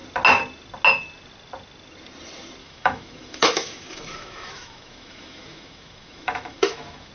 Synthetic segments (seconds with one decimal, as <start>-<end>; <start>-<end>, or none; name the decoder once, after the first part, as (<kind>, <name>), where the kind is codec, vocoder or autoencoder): 2.6-7.1 (autoencoder, DAC-VAE)